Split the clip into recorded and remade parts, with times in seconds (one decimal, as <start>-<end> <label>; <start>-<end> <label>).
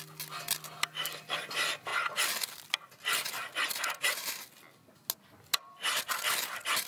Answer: 0.0-4.2 recorded; 4.2-4.8 remade; 4.8-5.5 recorded; 5.5-6.1 remade; 6.1-6.9 recorded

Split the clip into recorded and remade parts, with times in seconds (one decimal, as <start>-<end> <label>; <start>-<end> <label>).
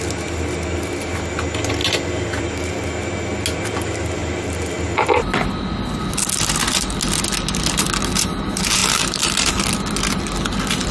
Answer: 0.0-1.8 recorded; 1.8-2.4 remade; 2.4-4.2 recorded; 4.2-5.4 remade; 5.4-8.8 recorded; 8.8-9.5 remade; 9.5-10.9 recorded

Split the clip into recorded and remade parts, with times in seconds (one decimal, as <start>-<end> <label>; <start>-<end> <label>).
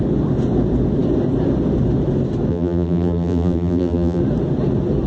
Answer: 0.0-2.5 recorded; 2.5-4.2 remade; 4.2-5.1 recorded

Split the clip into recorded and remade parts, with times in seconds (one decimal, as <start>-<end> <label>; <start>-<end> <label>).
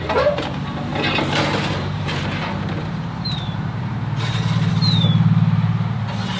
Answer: 0.0-0.9 recorded; 0.9-4.7 remade; 4.7-6.4 recorded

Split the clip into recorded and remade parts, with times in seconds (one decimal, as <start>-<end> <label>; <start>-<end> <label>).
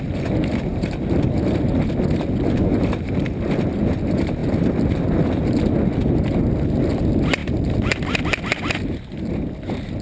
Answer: 0.0-0.7 recorded; 0.7-1.3 remade; 1.3-2.7 recorded; 2.7-3.5 remade; 3.5-10.0 recorded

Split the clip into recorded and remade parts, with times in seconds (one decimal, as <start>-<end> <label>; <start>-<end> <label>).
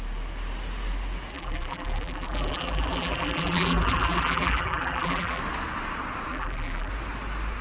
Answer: 0.0-1.3 recorded; 1.3-5.4 remade; 5.4-6.3 recorded; 6.3-6.9 remade; 6.9-7.6 recorded